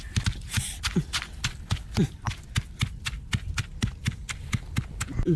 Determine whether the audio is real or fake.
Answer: real